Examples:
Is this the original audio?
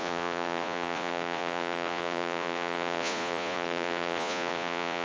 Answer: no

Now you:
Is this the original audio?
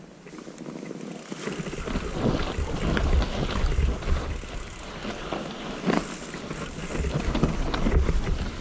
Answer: yes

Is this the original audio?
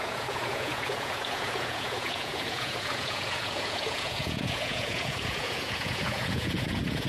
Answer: no